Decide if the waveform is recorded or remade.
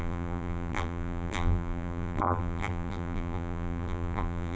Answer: remade